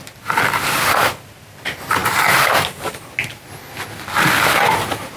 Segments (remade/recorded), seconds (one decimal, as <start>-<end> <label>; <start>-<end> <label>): 0.0-5.2 recorded

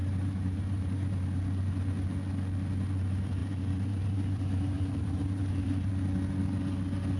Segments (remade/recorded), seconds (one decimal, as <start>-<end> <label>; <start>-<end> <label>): 0.0-1.4 remade; 1.4-3.4 recorded; 3.4-5.9 remade; 5.9-7.2 recorded

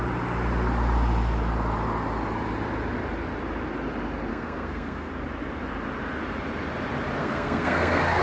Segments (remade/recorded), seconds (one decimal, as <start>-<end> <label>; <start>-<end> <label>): 0.0-4.3 recorded; 4.3-5.1 remade; 5.1-7.2 recorded; 7.2-8.2 remade

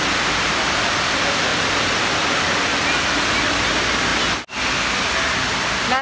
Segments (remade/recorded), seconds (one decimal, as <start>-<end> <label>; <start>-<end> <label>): 0.0-6.0 recorded

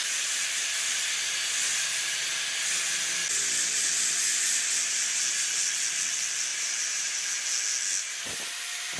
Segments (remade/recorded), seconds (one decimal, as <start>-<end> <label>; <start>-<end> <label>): 0.0-6.5 recorded; 6.5-7.2 remade; 7.2-9.0 recorded